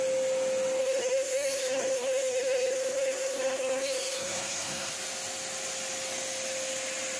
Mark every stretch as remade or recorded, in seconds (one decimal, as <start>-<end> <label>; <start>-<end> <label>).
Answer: 0.0-0.8 recorded; 0.8-4.9 remade; 4.9-7.2 recorded